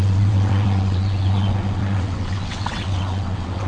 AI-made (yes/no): yes